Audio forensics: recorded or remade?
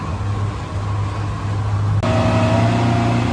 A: recorded